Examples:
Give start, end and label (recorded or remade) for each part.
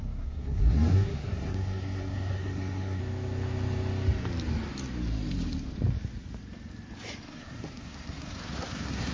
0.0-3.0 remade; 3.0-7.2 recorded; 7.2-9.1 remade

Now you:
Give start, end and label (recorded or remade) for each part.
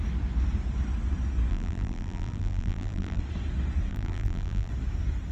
0.0-1.5 recorded; 1.5-3.2 remade; 3.2-3.9 recorded; 3.9-4.7 remade; 4.7-5.3 recorded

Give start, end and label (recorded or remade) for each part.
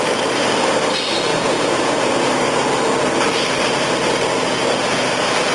0.0-1.3 recorded; 1.3-2.1 remade; 2.1-5.5 recorded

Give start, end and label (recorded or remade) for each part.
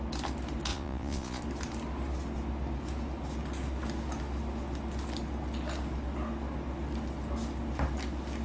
0.0-0.7 recorded; 0.7-1.4 remade; 1.4-8.4 recorded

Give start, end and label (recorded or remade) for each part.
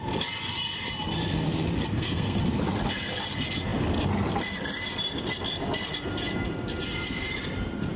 0.0-1.9 recorded; 1.9-2.4 remade; 2.4-8.0 recorded